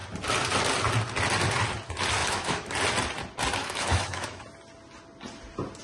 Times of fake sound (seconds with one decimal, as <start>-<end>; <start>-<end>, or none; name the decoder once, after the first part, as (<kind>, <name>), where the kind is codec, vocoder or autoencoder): 2.2-2.7 (autoencoder, DAC-VAE); 3.6-4.4